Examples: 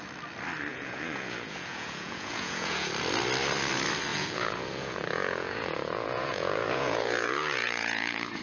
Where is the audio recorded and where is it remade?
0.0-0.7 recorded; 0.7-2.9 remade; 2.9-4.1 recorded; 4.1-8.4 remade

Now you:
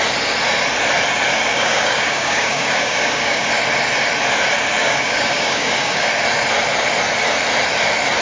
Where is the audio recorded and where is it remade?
0.0-1.5 recorded; 1.5-3.5 remade; 3.5-4.8 recorded; 4.8-6.1 remade; 6.1-8.2 recorded

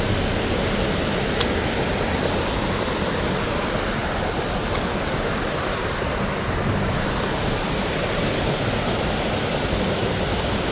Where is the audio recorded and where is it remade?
0.0-10.7 recorded